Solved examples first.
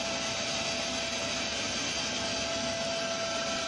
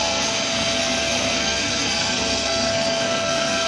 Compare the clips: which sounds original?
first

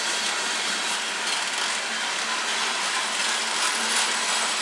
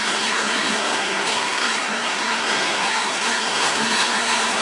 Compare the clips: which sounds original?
first